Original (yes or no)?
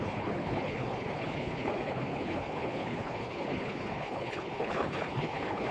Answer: no